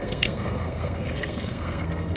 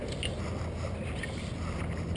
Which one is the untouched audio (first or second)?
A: second